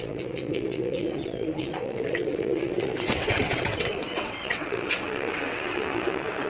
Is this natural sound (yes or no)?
no